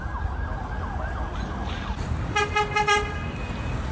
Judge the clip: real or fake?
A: real